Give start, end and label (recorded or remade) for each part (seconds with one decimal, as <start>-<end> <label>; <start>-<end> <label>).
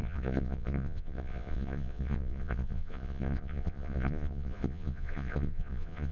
0.0-6.1 remade